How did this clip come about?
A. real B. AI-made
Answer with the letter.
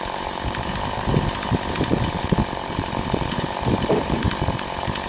B